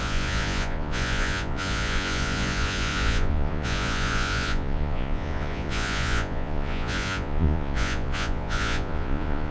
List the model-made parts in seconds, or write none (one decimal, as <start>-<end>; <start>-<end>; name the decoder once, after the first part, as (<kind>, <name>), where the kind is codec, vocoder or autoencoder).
0.0-9.5 (vocoder, Vocos)